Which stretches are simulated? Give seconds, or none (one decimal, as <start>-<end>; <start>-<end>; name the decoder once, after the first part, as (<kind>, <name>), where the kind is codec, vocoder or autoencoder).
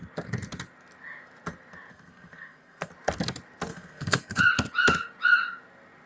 1.9-2.9 (codec, SNAC); 3.7-4.4